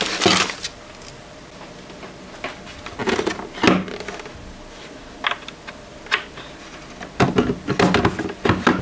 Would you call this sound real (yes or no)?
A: yes